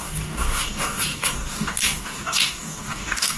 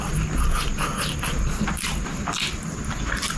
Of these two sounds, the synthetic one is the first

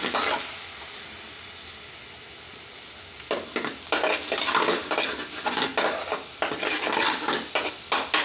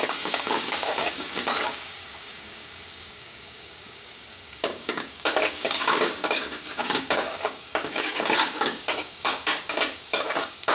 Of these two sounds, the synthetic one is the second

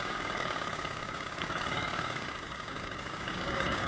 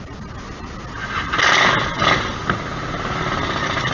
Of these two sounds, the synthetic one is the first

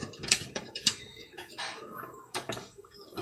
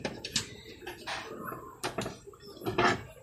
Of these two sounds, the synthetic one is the first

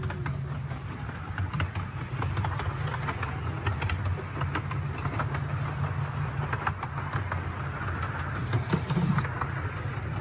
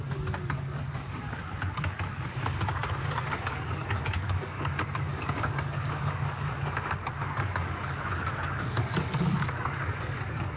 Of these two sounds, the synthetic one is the second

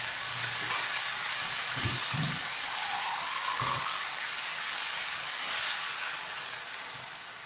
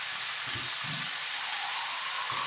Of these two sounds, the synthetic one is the first